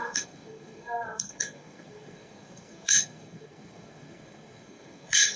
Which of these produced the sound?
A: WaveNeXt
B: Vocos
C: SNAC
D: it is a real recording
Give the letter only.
C